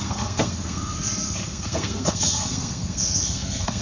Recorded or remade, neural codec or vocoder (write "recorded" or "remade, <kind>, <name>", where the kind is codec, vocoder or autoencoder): remade, codec, SNAC